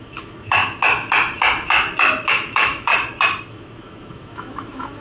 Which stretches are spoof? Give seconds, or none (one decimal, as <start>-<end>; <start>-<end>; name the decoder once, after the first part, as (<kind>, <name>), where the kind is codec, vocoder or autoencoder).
0.0-0.6 (autoencoder, DAC-VAE); 2.3-2.9; 3.5-5.0